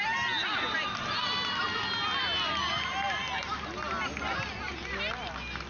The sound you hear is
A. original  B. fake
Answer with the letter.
A